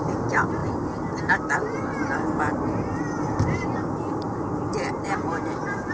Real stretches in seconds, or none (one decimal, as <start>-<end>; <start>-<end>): 0.0-5.9